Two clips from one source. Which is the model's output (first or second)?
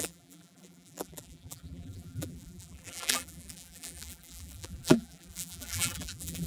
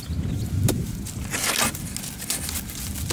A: first